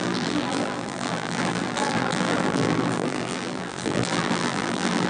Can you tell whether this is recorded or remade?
remade